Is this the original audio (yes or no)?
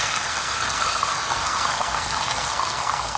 no